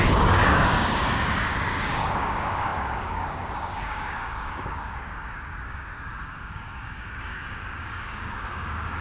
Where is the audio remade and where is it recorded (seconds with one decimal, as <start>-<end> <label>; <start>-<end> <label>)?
0.0-9.0 remade